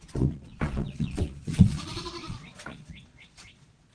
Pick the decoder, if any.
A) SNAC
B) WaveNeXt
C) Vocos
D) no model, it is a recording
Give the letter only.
C